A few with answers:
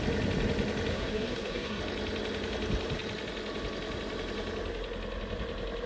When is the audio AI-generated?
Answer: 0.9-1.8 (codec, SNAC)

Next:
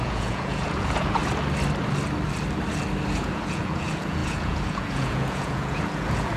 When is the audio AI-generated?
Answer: 0.0-1.2 (vocoder, Vocos); 3.1-6.4

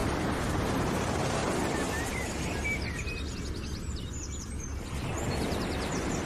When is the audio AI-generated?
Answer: 0.5-1.4 (vocoder, BigVGAN v2); 5.2-6.3

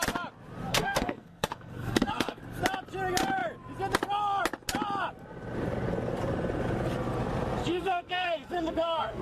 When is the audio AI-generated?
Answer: 0.7-2.4 (codec, SNAC); 7.6-9.2

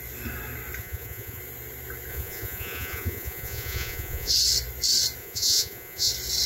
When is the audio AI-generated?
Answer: 0.8-1.4 (vocoder, Vocos); 2.1-4.3; 5.2-6.1